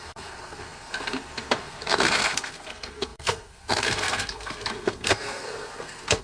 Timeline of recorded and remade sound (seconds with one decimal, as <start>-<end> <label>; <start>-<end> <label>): 0.0-6.2 remade

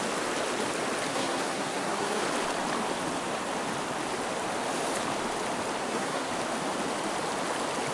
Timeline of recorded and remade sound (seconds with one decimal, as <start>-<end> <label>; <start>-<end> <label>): 0.0-1.1 recorded; 1.1-2.2 remade; 2.2-5.8 recorded; 5.8-6.3 remade; 6.3-7.9 recorded

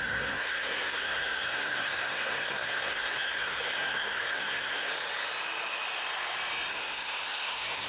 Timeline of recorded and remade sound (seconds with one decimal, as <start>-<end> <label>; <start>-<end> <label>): 0.0-4.9 remade; 4.9-6.7 recorded; 6.7-7.9 remade

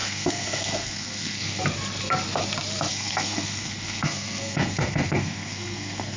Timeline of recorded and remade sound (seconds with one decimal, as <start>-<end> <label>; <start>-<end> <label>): 0.0-1.6 remade; 1.6-2.9 recorded; 2.9-6.2 remade

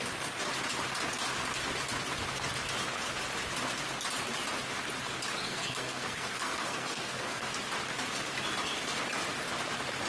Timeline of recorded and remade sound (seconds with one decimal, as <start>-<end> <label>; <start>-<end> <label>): 0.0-5.4 recorded; 5.4-7.5 remade; 7.5-10.1 recorded

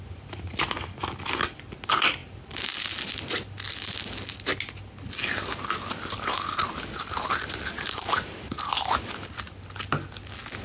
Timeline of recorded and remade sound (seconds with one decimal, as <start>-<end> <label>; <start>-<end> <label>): 0.0-10.6 recorded